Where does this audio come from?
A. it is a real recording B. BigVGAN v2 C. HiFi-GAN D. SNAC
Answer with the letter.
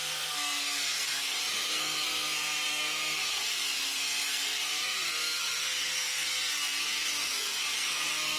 D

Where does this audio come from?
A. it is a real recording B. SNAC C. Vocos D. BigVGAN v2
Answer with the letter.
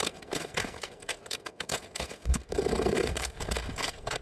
B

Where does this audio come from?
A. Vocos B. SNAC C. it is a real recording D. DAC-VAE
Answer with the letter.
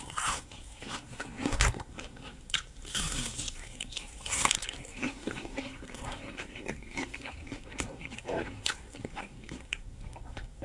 B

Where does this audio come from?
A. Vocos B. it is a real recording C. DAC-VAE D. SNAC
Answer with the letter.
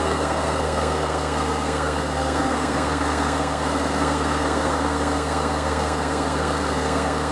D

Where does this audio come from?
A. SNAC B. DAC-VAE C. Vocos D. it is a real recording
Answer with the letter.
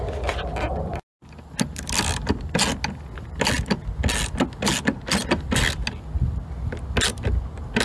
D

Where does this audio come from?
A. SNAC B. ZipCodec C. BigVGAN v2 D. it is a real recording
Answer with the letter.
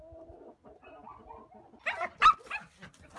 D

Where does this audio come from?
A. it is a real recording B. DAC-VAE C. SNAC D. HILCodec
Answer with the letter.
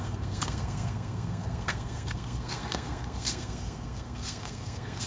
C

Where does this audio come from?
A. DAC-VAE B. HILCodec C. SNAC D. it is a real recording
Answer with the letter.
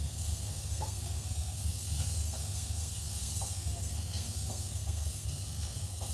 C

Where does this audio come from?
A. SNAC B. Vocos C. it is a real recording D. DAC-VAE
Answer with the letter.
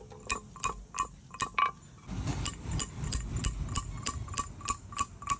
C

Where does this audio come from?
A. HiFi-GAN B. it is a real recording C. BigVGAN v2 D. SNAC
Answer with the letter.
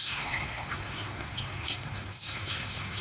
D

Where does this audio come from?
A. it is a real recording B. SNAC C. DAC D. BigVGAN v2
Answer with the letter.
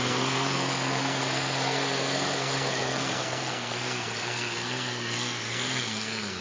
B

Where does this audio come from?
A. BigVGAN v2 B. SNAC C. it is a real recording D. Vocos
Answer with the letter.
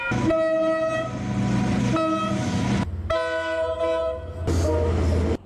C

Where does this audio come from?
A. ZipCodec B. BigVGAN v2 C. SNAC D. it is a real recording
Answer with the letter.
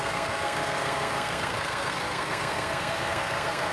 C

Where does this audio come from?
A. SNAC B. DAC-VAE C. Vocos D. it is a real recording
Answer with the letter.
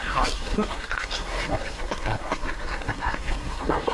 A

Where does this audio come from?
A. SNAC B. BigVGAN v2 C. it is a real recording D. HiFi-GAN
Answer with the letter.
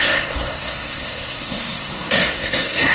A